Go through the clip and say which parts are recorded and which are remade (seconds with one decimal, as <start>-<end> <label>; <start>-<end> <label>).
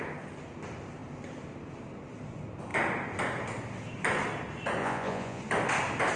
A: 0.0-4.8 recorded; 4.8-5.4 remade; 5.4-6.2 recorded